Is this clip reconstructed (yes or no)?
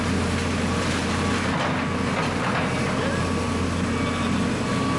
no